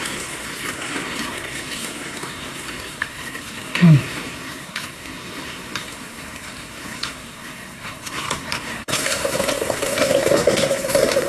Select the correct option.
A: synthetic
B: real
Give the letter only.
A